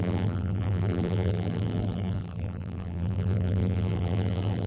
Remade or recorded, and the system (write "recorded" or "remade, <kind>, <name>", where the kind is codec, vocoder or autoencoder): remade, vocoder, BigVGAN v2